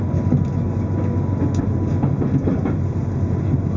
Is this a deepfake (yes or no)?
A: no